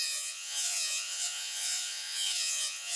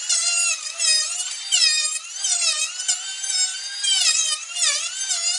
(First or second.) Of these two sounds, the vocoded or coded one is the first